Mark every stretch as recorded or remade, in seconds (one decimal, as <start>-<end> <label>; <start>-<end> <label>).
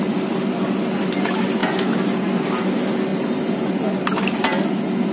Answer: 0.0-5.1 recorded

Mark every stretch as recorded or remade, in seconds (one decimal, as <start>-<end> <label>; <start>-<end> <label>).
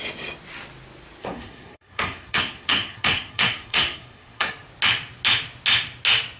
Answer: 0.0-1.2 recorded; 1.2-4.5 remade; 4.5-6.4 recorded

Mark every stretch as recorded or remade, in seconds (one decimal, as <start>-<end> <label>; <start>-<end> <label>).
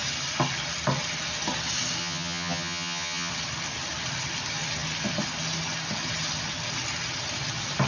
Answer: 0.0-2.0 recorded; 2.0-3.3 remade; 3.3-7.9 recorded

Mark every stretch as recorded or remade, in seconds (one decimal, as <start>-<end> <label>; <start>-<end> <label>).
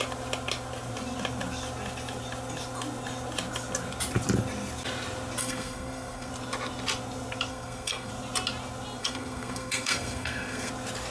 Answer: 0.0-5.4 recorded; 5.4-6.3 remade; 6.3-7.5 recorded; 7.5-8.1 remade; 8.1-9.0 recorded; 9.0-10.7 remade; 10.7-11.1 recorded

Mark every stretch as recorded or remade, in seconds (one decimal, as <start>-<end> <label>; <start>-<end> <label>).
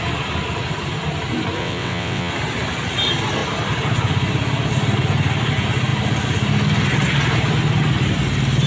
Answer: 0.0-1.6 recorded; 1.6-2.3 remade; 2.3-8.7 recorded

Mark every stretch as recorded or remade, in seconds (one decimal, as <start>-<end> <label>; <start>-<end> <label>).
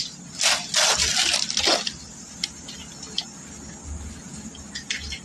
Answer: 0.0-5.2 recorded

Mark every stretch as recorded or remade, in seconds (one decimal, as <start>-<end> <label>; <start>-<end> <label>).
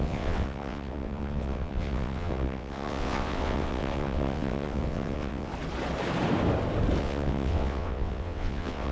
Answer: 0.0-5.5 remade; 5.5-7.0 recorded; 7.0-8.9 remade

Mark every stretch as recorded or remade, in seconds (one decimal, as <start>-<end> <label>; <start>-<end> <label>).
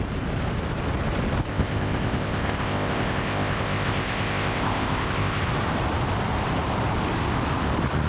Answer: 0.0-1.5 recorded; 1.5-5.4 remade; 5.4-8.1 recorded